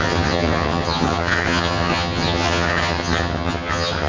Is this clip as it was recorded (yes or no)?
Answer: no